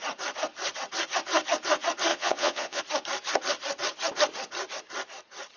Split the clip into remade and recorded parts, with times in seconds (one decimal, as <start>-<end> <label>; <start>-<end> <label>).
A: 0.0-2.1 recorded; 2.1-2.8 remade; 2.8-5.6 recorded